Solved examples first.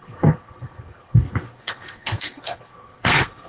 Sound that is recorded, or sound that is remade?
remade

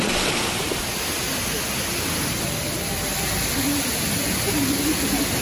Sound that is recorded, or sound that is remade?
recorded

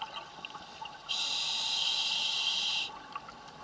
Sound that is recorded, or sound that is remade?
recorded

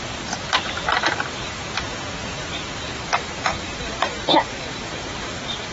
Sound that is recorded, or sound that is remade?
remade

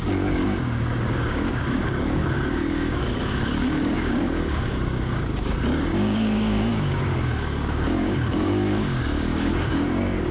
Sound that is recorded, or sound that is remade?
remade